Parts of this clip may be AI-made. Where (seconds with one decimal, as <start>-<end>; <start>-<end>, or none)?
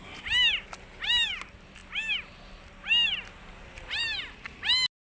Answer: none